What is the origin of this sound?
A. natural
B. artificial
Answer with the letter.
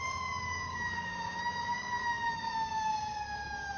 B